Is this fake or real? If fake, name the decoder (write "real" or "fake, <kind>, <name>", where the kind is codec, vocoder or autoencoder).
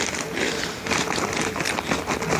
real